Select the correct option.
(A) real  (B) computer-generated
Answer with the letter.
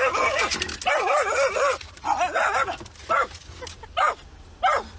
A